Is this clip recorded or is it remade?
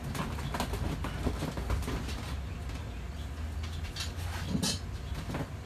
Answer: recorded